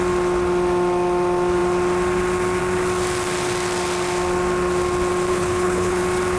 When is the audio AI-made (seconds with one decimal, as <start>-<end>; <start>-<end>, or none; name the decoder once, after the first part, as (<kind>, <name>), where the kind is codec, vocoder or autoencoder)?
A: 5.3-6.0 (codec, HILCodec)